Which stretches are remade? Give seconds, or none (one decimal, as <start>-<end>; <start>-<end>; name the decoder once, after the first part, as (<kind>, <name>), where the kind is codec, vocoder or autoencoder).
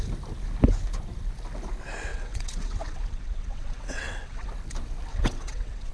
2.1-4.5 (vocoder, WaveNeXt); 5.1-5.9